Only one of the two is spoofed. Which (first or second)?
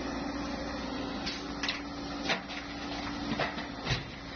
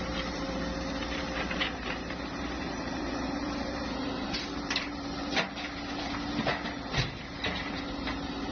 second